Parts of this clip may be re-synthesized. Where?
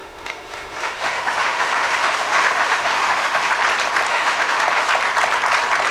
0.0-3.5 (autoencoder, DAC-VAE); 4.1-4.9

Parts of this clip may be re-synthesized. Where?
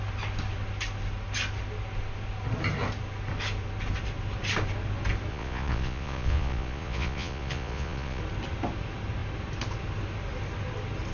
5.3-8.2 (vocoder, Vocos)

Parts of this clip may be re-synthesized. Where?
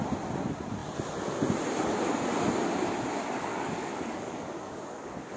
3.5-5.4 (codec, DAC)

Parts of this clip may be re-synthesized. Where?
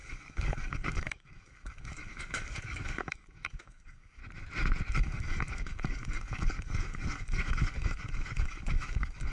0.0-4.2 (codec, DAC); 4.9-9.3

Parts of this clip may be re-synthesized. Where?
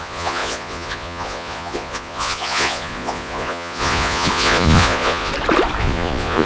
0.0-5.3 (vocoder, Vocos); 5.8-6.5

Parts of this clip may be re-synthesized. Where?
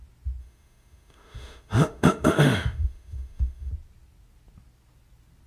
0.4-3.7 (autoencoder, DAC-VAE)